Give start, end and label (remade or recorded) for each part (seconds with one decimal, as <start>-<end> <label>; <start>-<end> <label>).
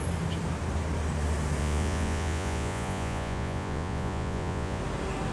0.0-1.6 recorded; 1.6-4.8 remade; 4.8-5.3 recorded